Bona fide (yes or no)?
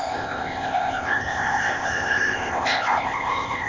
no